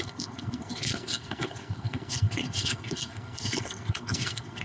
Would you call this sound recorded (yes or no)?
no